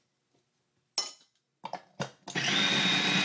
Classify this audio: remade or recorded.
recorded